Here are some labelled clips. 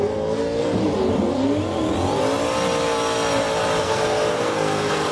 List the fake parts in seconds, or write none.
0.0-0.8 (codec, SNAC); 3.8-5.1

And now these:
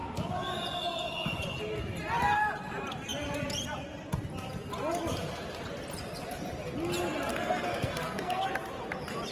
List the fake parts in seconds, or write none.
7.3-8.5 (codec, SNAC)

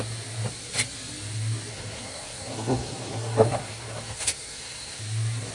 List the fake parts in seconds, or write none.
1.7-5.0 (codec, SNAC)

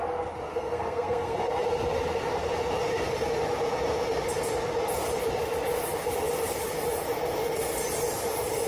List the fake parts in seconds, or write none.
0.5-1.5 (codec, SNAC)

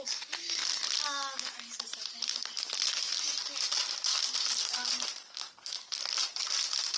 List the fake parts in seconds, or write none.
5.2-6.0 (codec, SNAC)

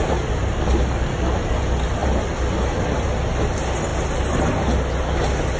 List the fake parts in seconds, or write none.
none

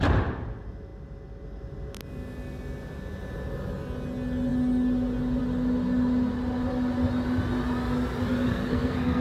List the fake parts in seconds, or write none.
8.5-9.2 (codec, SNAC)

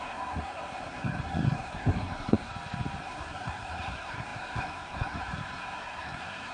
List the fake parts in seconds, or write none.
0.0-2.5 (codec, SNAC); 3.0-6.5